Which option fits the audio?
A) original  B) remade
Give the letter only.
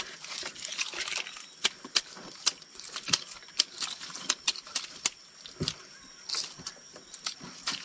B